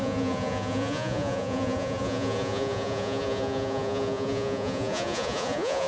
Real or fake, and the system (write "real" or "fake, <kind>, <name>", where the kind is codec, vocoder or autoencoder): fake, vocoder, Vocos